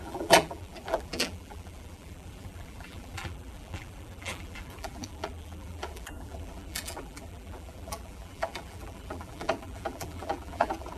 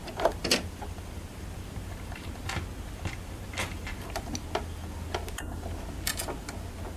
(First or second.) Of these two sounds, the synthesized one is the first